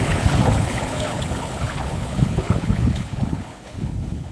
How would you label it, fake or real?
fake